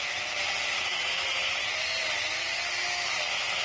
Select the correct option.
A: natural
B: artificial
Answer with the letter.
A